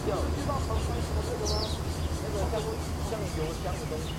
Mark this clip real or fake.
real